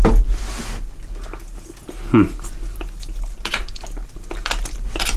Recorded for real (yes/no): yes